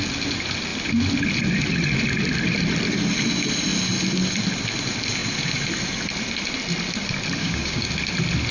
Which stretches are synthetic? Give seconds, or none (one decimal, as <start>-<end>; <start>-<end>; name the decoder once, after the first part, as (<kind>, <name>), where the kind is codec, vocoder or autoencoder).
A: 7.4-7.9 (codec, DAC)